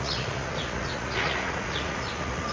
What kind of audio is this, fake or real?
fake